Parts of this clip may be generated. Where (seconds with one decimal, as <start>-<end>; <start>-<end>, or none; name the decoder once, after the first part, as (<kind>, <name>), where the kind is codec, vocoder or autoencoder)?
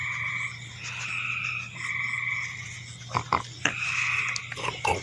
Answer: none